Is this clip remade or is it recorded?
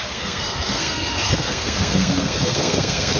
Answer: remade